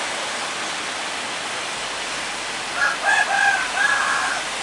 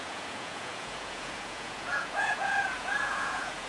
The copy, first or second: second